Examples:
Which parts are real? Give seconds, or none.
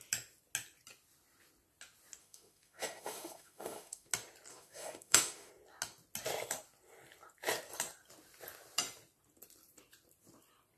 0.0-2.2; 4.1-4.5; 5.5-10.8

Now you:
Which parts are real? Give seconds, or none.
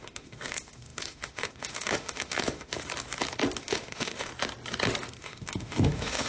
2.7-3.6; 4.3-5.2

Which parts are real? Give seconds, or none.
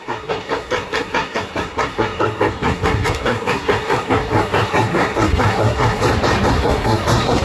6.0-6.5